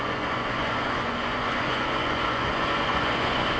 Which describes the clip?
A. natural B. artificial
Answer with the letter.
B